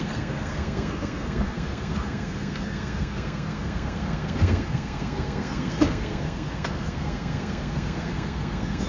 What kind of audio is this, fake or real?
fake